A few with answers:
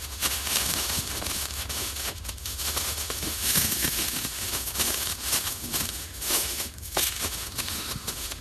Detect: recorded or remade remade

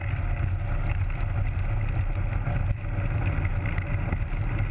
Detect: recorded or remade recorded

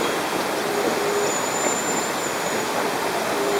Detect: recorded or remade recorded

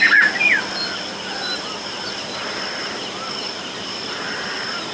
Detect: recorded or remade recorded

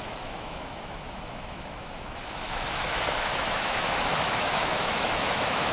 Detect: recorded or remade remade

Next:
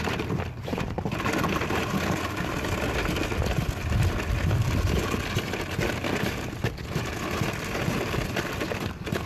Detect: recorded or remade recorded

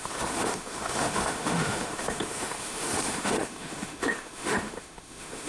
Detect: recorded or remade remade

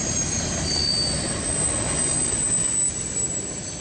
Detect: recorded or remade recorded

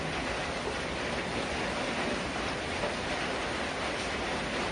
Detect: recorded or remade recorded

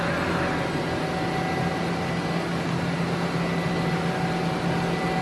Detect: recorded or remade recorded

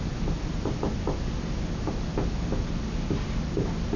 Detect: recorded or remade recorded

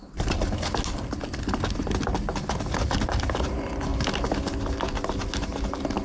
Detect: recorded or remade recorded